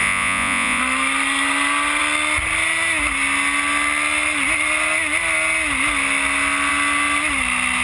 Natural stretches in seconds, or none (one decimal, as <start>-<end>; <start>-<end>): 0.8-7.8